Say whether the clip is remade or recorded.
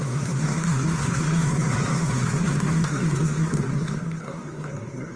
remade